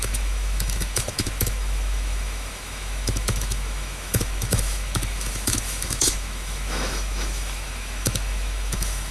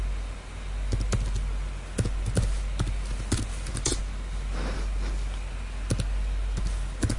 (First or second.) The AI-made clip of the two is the first